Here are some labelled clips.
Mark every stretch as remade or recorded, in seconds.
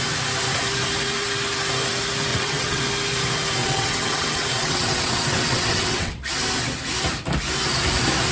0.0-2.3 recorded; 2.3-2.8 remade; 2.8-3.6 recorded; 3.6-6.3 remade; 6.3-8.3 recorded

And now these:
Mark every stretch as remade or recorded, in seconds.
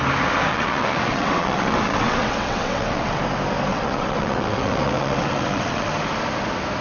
0.0-0.5 recorded; 0.5-3.2 remade; 3.2-3.7 recorded; 3.7-5.9 remade; 5.9-6.8 recorded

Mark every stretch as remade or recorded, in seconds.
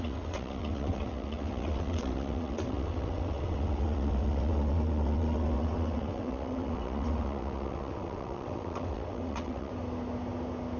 0.0-9.7 remade; 9.7-10.8 recorded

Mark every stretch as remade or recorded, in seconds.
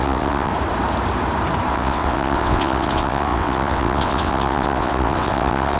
0.0-0.5 remade; 0.5-1.7 recorded; 1.7-5.8 remade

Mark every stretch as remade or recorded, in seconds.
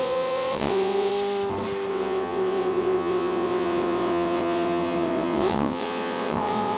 0.0-1.1 remade; 1.1-1.9 recorded; 1.9-6.8 remade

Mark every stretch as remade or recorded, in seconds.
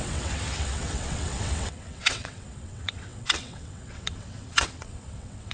0.0-5.5 remade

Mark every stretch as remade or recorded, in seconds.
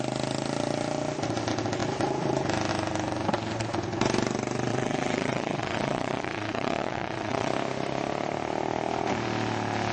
0.0-4.7 recorded; 4.7-7.5 remade; 7.5-9.9 recorded